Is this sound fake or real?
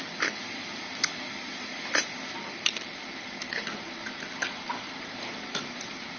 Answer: real